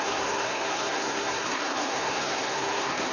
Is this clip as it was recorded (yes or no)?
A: no